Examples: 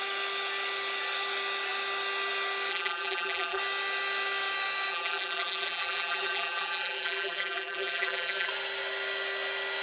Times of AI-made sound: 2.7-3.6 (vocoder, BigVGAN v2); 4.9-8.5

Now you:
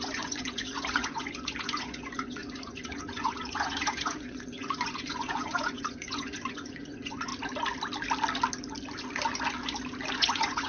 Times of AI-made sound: 0.0-7.3 (vocoder, Vocos); 10.1-10.7

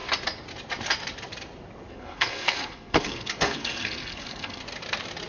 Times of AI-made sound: 1.9-4.6 (codec, SNAC)

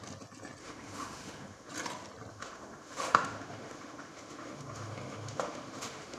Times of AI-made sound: 0.6-1.7 (autoencoder, DAC-VAE); 2.3-6.2

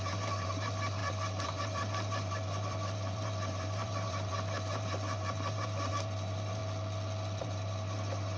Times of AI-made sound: 0.0-6.6 (vocoder, BigVGAN v2); 7.4-8.4